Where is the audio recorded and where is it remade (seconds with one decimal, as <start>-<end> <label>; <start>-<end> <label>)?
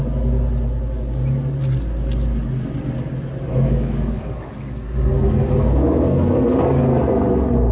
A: 0.0-3.5 recorded; 3.5-6.2 remade; 6.2-7.7 recorded